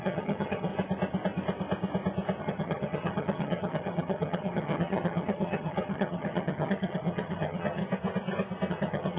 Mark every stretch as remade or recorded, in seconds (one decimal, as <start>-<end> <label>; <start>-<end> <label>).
0.0-0.7 remade; 0.7-2.4 recorded; 2.4-7.8 remade; 7.8-8.7 recorded; 8.7-9.2 remade